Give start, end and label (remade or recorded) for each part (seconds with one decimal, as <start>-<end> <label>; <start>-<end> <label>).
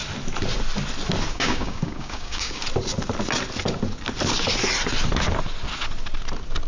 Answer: 0.0-1.3 recorded; 1.3-2.6 remade; 2.6-6.7 recorded